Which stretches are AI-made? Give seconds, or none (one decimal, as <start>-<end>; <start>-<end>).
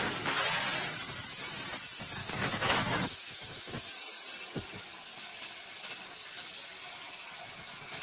2.2-3.9